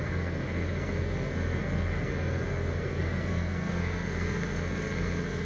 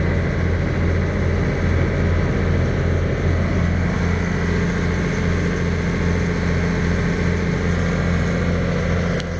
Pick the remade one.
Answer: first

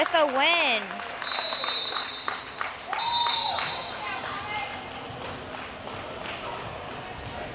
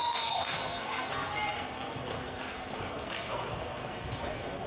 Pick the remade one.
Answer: second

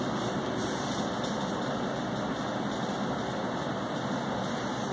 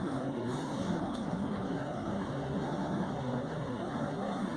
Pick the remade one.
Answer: second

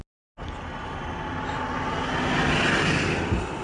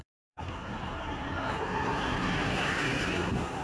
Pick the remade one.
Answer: second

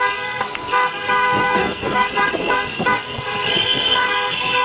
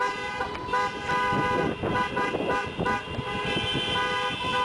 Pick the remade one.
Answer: first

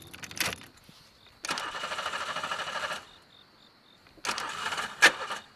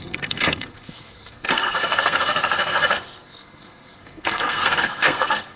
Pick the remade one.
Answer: second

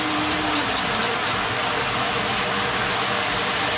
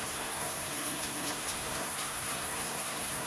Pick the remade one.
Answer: second